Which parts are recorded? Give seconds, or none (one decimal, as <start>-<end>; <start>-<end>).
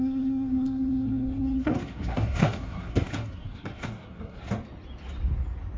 4.4-5.8